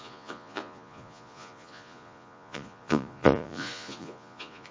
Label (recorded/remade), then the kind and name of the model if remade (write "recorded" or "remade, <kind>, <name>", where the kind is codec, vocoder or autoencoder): remade, vocoder, Vocos